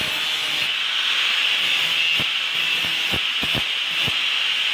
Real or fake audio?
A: real